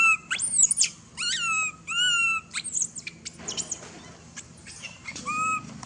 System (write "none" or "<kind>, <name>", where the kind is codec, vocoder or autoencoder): none